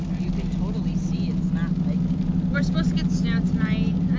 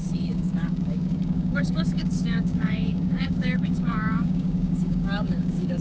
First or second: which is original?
first